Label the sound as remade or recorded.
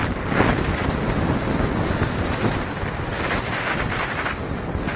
recorded